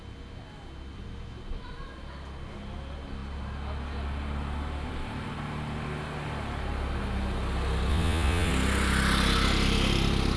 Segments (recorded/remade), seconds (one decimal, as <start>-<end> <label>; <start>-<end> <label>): 0.0-7.9 recorded; 7.9-8.5 remade; 8.5-10.4 recorded